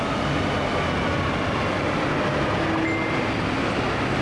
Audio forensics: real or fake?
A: real